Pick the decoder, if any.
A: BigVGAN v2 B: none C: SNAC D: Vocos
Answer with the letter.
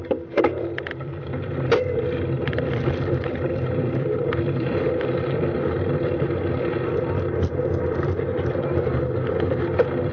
A